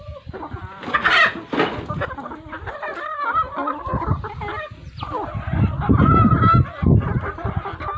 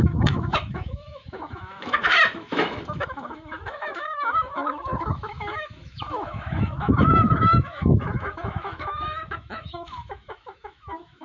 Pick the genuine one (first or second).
first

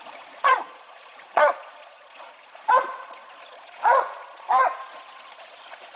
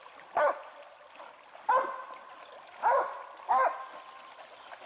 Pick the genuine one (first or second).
second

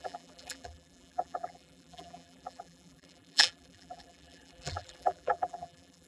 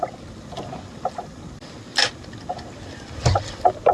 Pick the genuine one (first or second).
second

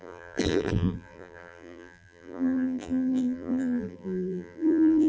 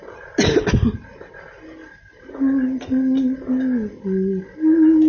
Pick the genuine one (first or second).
second